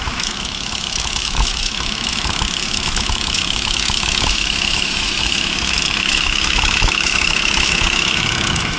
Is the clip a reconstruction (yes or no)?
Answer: yes